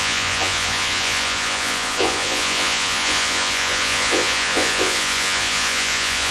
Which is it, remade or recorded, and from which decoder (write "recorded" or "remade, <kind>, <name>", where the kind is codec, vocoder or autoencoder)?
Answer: remade, vocoder, Vocos